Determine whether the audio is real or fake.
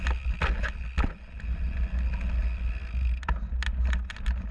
real